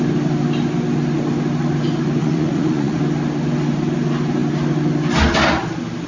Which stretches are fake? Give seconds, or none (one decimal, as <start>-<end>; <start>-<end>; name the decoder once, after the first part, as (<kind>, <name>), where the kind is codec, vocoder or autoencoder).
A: 2.2-3.0 (vocoder, Vocos)